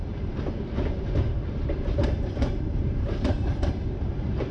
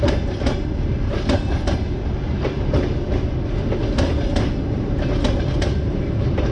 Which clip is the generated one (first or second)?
first